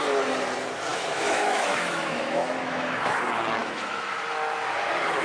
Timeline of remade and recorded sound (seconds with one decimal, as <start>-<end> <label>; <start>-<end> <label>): 0.0-0.9 recorded; 0.9-3.2 remade; 3.2-3.6 recorded; 3.6-4.1 remade; 4.1-5.2 recorded

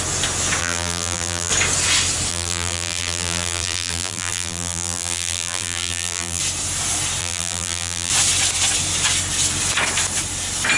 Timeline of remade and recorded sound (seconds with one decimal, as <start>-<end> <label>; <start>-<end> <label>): 0.0-0.6 recorded; 0.6-1.5 remade; 1.5-2.3 recorded; 2.3-6.4 remade; 6.4-7.2 recorded; 7.2-8.1 remade; 8.1-10.8 recorded